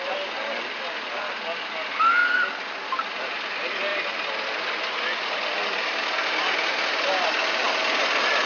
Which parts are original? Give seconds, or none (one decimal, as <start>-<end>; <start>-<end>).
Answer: 0.0-8.5